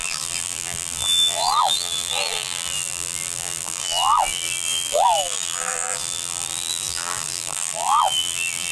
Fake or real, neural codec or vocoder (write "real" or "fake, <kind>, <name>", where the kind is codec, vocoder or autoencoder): fake, vocoder, BigVGAN v2